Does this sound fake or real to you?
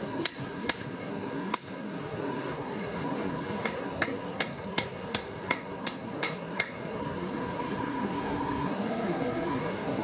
fake